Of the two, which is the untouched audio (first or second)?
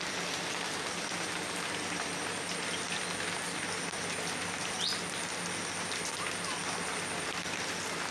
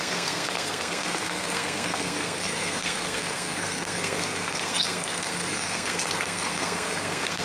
first